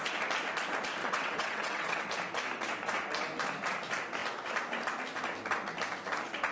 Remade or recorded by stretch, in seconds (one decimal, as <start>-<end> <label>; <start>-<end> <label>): 0.0-1.0 recorded; 1.0-2.1 remade; 2.1-6.5 recorded